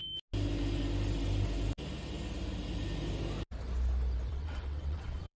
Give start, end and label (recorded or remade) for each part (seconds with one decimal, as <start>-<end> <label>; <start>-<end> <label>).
0.0-4.3 recorded; 4.3-5.4 remade